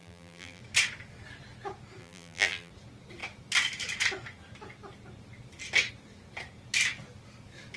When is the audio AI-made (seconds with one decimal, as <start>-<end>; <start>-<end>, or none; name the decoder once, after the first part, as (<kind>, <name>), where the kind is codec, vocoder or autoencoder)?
0.0-0.6 (vocoder, BigVGAN v2); 2.0-2.7